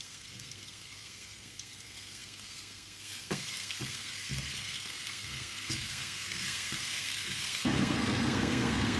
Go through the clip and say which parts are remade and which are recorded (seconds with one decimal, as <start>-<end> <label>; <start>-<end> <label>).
0.0-9.0 remade

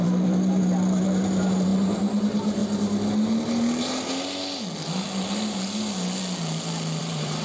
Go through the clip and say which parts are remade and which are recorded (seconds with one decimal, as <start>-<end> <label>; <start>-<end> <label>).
0.0-1.7 remade; 1.7-2.2 recorded; 2.2-2.6 remade; 2.6-7.0 recorded; 7.0-7.4 remade